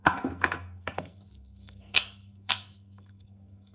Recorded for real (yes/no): no